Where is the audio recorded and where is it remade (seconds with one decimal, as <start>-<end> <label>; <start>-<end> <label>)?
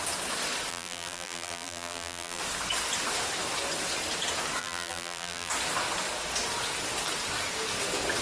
0.0-0.7 recorded; 0.7-2.4 remade; 2.4-4.6 recorded; 4.6-5.5 remade; 5.5-8.2 recorded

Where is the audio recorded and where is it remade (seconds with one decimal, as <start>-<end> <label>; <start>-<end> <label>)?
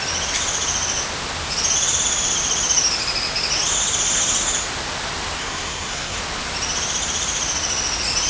0.0-5.4 recorded; 5.4-6.2 remade; 6.2-8.3 recorded